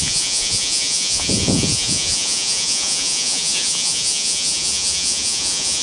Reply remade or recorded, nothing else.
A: remade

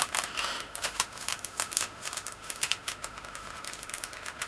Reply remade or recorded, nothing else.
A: remade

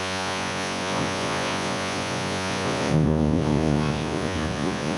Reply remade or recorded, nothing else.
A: remade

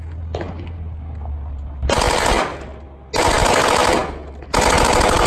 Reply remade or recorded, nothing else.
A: recorded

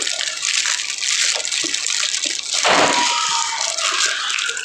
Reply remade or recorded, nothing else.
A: recorded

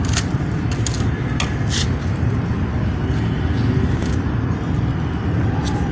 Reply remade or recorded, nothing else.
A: recorded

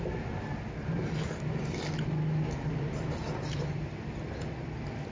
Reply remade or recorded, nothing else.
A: recorded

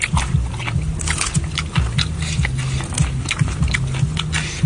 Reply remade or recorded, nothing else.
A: recorded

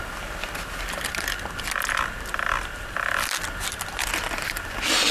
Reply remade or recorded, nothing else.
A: recorded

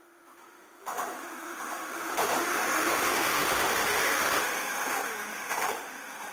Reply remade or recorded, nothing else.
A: remade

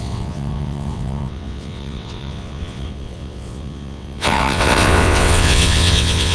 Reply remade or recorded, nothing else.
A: remade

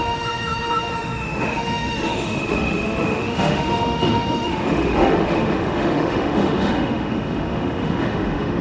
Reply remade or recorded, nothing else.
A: remade